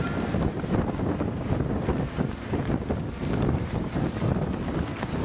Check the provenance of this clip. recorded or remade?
recorded